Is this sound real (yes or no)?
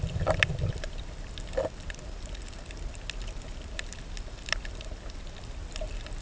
yes